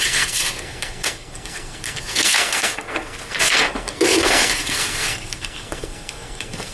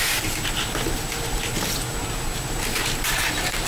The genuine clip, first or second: second